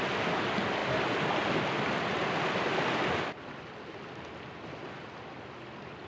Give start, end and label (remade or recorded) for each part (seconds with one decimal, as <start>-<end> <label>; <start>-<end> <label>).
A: 0.0-6.1 recorded